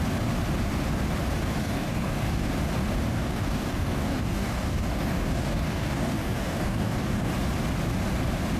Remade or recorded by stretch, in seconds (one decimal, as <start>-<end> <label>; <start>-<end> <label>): 0.0-1.6 recorded; 1.6-2.5 remade; 2.5-3.1 recorded; 3.1-7.3 remade; 7.3-8.6 recorded